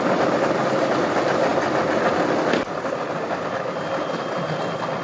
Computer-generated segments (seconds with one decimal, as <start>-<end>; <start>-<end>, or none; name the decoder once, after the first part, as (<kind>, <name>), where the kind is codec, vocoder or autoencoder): none